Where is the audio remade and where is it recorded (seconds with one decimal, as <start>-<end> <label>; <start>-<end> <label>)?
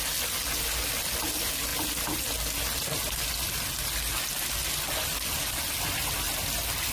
0.0-6.9 recorded